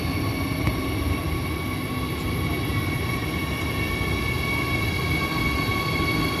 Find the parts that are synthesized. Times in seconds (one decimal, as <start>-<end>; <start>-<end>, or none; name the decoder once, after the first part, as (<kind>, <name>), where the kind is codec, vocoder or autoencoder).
none